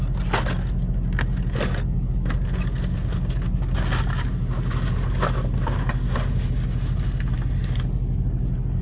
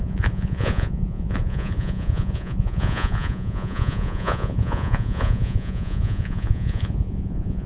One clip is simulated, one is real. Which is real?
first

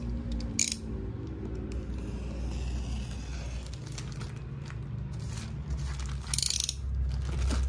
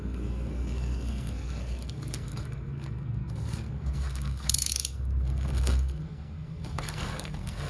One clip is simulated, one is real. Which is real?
first